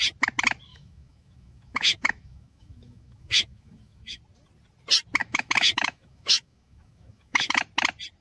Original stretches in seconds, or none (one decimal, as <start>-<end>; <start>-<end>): 0.0-0.7; 4.2-5.2; 7.6-8.2